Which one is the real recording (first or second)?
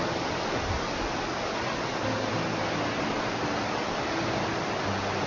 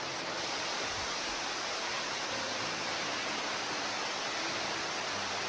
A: first